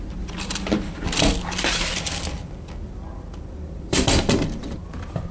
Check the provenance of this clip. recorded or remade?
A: remade